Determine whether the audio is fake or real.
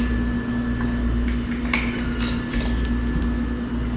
real